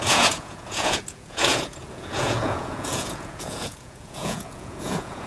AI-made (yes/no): yes